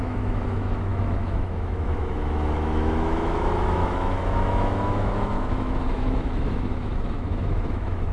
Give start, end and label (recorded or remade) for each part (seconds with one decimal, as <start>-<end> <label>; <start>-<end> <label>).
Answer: 0.0-8.1 remade